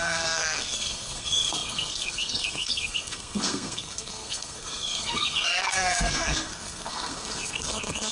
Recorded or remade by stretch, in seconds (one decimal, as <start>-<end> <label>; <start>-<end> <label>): 0.0-8.1 remade